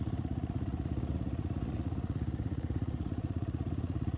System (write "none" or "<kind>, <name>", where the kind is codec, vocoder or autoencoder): vocoder, Vocos